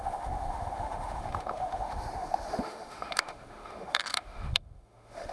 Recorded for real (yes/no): no